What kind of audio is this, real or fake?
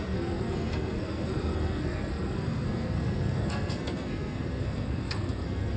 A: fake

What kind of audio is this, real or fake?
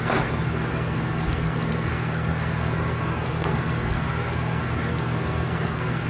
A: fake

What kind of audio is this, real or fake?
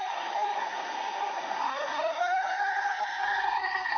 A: fake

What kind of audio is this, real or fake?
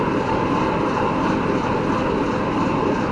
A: real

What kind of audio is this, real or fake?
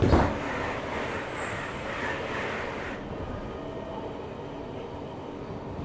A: real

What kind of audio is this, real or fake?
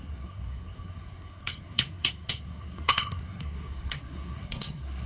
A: fake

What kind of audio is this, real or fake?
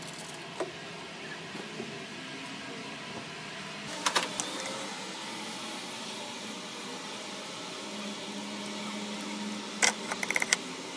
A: real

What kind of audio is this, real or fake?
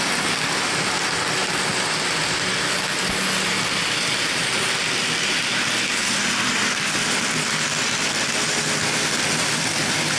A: real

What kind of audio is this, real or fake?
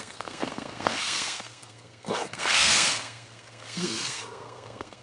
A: fake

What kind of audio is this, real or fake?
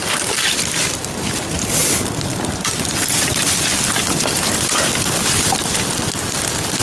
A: real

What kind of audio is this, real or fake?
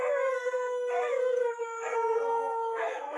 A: fake